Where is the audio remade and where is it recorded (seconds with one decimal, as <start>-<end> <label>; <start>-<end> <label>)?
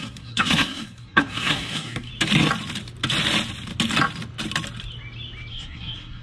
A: 0.0-2.1 remade; 2.1-5.5 recorded; 5.5-6.2 remade